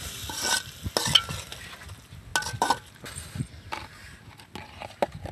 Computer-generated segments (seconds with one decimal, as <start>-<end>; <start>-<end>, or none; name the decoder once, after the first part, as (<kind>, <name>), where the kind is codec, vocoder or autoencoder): none